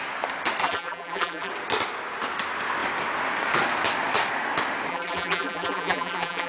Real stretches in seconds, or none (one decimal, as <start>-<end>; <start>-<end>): 0.0-0.6; 1.5-4.9